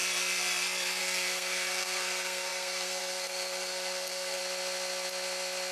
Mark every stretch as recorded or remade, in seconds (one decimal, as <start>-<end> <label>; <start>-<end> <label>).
0.0-1.0 recorded; 1.0-4.4 remade; 4.4-5.7 recorded